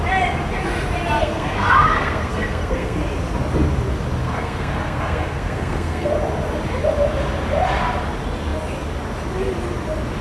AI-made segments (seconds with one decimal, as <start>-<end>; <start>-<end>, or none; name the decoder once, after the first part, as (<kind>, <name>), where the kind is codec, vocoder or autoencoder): 1.2-3.0 (codec, SNAC); 4.2-6.1